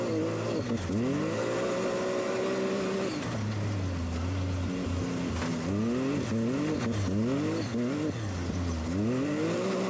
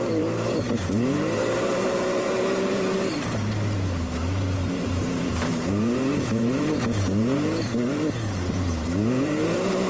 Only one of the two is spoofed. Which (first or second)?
second